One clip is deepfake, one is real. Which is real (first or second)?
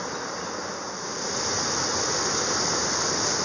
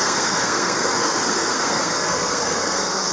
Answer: first